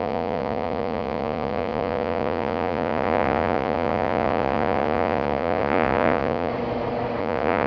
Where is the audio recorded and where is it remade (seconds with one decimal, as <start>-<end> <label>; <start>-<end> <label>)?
0.0-6.5 remade; 6.5-7.2 recorded; 7.2-7.7 remade